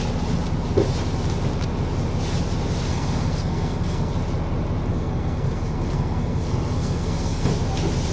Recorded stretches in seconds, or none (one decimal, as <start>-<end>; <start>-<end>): 0.0-2.9; 4.1-4.9; 7.5-8.1